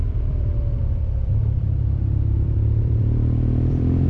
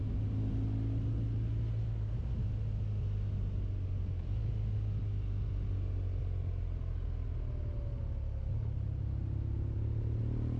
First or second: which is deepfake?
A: first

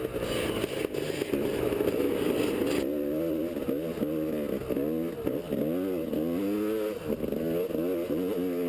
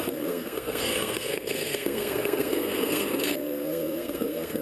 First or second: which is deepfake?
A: second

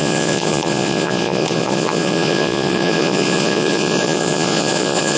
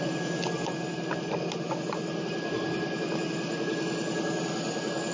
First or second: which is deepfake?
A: first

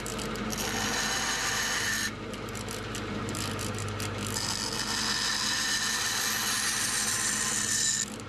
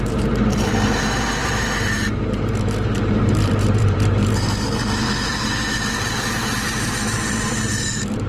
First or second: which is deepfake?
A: second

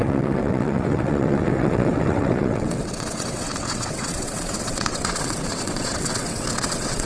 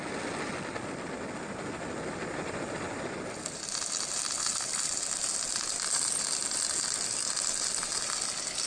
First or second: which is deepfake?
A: first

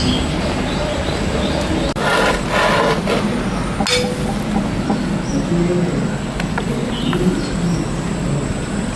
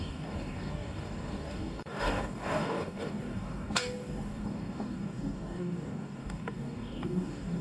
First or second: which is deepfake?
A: second